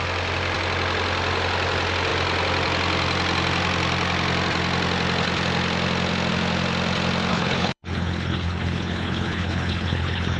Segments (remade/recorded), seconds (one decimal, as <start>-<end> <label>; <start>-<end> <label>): 0.0-7.3 recorded; 7.3-10.4 remade